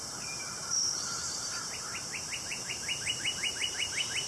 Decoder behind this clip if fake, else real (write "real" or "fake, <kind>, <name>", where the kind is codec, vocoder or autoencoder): fake, vocoder, BigVGAN v2